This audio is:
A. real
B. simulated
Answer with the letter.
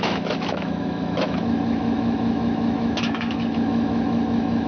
B